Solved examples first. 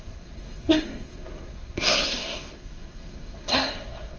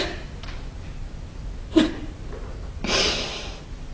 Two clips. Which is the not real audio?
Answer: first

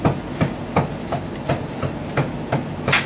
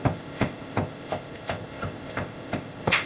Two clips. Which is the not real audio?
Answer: second